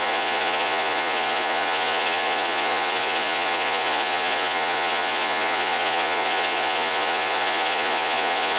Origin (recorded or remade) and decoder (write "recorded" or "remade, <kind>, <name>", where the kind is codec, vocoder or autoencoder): remade, vocoder, Vocos